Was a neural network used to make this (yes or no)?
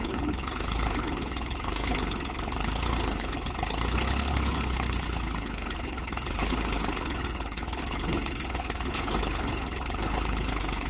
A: yes